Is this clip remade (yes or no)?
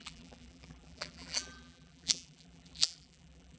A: yes